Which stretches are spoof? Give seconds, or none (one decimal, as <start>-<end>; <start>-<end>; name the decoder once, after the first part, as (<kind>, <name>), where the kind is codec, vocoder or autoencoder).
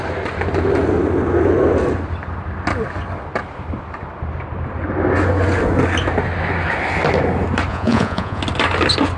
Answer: 7.7-8.4 (vocoder, Vocos)